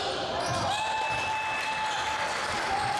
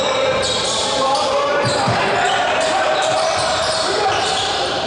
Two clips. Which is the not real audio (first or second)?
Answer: second